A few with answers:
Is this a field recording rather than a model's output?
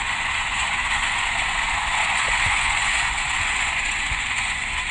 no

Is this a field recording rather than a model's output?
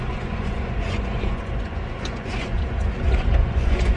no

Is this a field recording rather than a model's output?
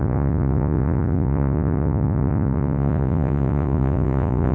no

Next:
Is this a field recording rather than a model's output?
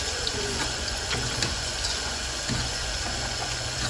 no